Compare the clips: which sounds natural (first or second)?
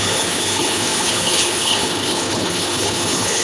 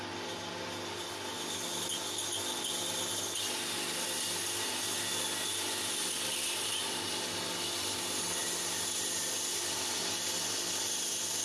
second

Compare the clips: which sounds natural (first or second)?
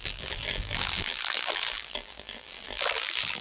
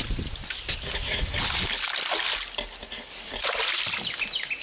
second